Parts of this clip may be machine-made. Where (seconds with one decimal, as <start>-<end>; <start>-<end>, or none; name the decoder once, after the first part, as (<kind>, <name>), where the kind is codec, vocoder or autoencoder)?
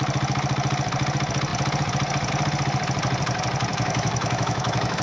3.7-5.0 (autoencoder, DAC-VAE)